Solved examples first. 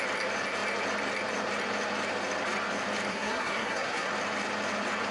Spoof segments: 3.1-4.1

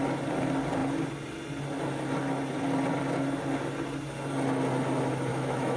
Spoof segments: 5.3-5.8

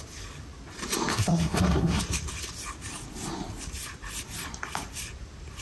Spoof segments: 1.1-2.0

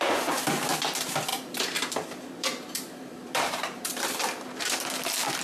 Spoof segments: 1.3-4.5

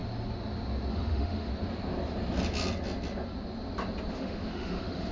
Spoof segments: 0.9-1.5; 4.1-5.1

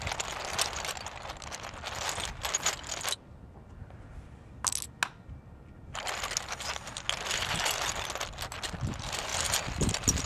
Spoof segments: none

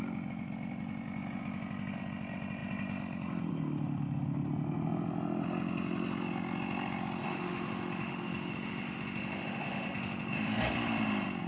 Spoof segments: 7.2-10.7